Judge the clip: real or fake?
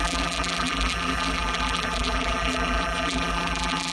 fake